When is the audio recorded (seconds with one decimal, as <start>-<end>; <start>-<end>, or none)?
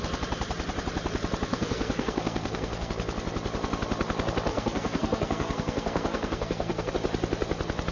0.0-1.5; 2.9-4.5; 6.9-7.9